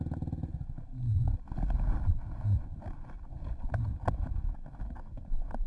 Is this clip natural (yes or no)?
yes